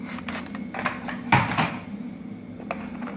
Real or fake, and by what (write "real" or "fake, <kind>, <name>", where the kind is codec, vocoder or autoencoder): real